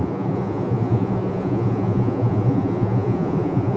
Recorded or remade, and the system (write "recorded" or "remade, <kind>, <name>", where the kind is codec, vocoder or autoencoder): remade, vocoder, Vocos